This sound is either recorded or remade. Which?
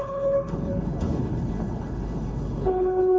remade